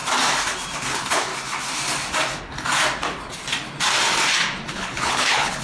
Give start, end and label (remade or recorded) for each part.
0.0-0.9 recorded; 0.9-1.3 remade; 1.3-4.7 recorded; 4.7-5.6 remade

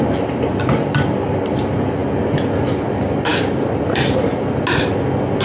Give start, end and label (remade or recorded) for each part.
0.0-5.4 recorded

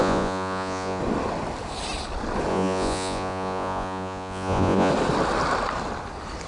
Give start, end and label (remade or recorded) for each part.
0.0-1.0 remade; 1.0-2.5 recorded; 2.5-4.9 remade; 4.9-6.5 recorded

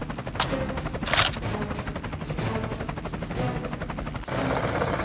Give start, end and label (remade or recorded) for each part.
0.0-5.0 recorded

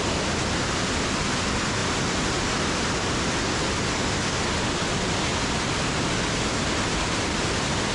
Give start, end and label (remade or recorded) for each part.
0.0-7.9 recorded

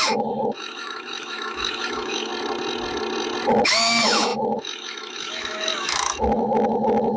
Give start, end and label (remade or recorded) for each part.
0.0-2.3 remade; 2.3-3.5 recorded; 3.5-7.2 remade

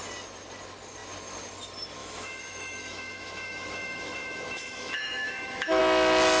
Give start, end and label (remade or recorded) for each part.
0.0-2.0 recorded; 2.0-5.8 remade; 5.8-6.4 recorded